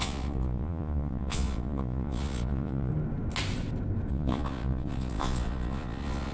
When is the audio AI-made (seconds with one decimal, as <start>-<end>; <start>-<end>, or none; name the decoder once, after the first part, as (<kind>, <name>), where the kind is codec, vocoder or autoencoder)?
0.0-2.9 (vocoder, Vocos); 4.1-6.3